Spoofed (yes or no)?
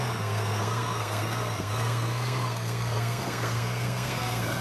yes